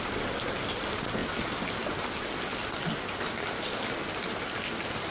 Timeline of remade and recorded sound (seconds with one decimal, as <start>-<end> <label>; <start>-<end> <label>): 0.0-5.1 recorded